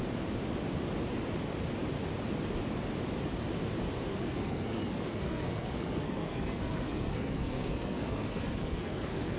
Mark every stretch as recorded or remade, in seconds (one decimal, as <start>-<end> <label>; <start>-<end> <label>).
0.0-4.1 recorded; 4.1-9.4 remade